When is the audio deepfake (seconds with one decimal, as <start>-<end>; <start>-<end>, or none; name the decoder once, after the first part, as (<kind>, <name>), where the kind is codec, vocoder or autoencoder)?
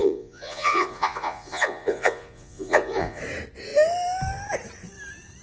0.0-3.2 (vocoder, Vocos)